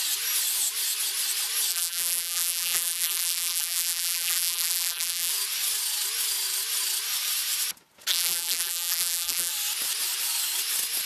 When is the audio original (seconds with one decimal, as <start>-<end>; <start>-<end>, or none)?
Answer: 0.0-1.7; 5.3-8.1; 9.5-11.1